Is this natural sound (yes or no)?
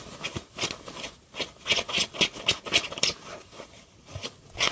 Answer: yes